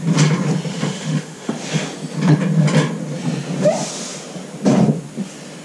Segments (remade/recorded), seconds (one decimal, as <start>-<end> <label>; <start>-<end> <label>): 0.0-0.7 recorded; 0.7-1.5 remade; 1.5-5.6 recorded